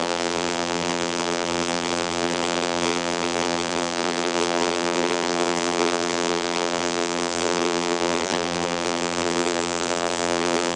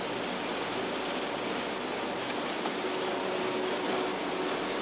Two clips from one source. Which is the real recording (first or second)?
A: second